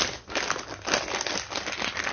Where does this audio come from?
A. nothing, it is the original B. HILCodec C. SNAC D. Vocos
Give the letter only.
A